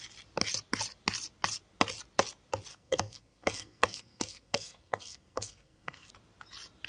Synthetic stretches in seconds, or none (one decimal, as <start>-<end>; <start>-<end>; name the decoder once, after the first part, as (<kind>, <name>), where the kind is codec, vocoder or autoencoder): 2.7-6.1 (codec, SNAC)